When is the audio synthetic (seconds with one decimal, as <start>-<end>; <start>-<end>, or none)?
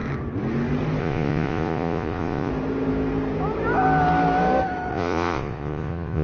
1.0-2.5; 4.9-6.2